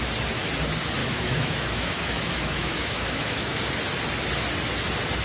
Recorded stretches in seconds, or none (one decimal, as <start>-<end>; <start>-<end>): 0.0-1.0; 3.6-5.2